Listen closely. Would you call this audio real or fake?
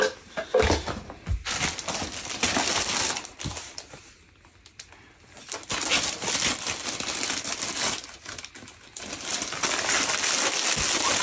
real